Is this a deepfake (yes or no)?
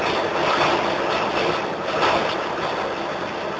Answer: yes